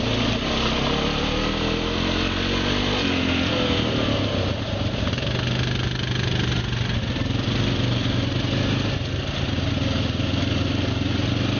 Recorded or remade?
recorded